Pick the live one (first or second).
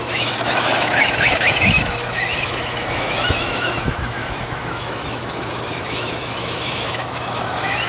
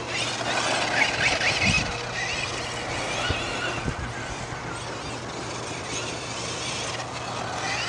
second